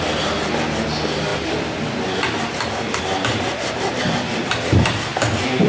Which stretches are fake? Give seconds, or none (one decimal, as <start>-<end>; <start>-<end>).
none